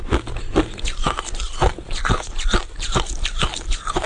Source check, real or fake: real